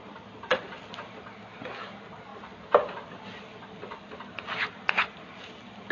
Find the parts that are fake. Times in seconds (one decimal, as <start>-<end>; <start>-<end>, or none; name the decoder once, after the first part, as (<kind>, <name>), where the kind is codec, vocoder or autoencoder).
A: none